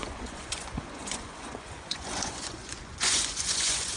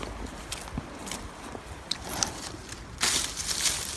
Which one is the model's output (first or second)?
first